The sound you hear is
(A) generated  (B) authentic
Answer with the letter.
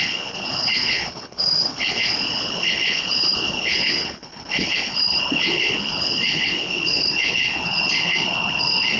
A